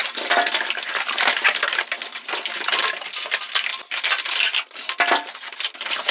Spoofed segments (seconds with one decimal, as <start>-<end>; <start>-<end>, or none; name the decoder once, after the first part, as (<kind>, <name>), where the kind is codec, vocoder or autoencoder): none